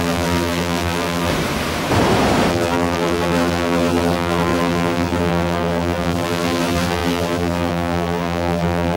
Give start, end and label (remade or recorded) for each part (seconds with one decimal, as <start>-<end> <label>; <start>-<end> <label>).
0.0-1.3 remade; 1.3-2.5 recorded; 2.5-9.0 remade